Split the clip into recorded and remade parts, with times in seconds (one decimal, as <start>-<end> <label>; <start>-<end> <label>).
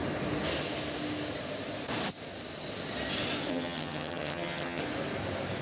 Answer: 0.0-3.5 recorded; 3.5-4.8 remade; 4.8-5.6 recorded